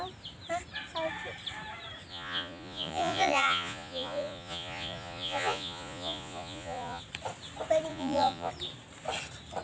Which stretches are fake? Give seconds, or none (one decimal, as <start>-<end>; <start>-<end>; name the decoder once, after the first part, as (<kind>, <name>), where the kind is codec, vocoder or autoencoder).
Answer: 2.1-7.0 (vocoder, Vocos); 7.9-8.5